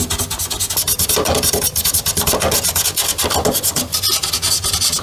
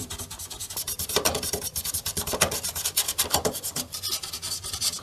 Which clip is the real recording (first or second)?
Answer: first